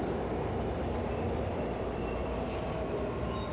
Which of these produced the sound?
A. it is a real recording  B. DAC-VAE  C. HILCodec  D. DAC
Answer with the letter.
A